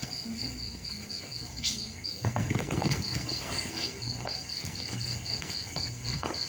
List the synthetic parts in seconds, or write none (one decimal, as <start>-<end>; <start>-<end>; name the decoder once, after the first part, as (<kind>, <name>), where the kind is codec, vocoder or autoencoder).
0.0-6.5 (codec, SNAC)